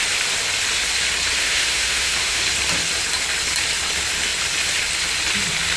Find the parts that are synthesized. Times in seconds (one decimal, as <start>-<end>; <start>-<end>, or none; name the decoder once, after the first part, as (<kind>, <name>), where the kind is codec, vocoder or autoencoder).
1.4-2.4 (autoencoder, DAC-VAE)